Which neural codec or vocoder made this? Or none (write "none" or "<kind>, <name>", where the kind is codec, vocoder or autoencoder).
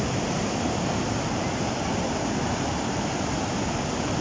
none